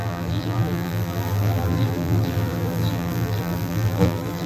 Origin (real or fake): fake